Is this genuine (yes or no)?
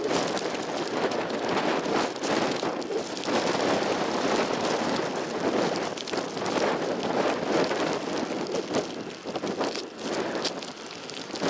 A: yes